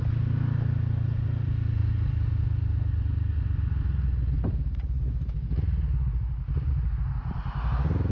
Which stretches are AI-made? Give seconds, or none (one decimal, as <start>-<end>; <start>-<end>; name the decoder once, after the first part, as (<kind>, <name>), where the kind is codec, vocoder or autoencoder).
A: none